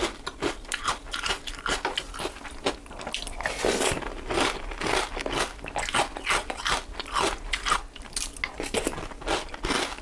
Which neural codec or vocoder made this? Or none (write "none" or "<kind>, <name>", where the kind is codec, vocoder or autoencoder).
none